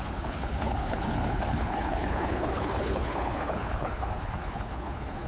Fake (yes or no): yes